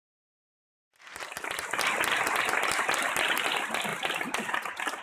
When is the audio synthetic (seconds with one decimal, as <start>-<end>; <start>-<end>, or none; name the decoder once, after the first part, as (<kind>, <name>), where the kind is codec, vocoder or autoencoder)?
none